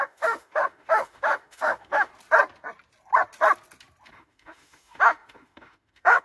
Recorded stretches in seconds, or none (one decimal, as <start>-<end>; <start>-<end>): 2.1-4.1